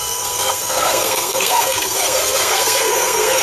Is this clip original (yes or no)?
no